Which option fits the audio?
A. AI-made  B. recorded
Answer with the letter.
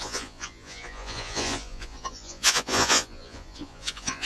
A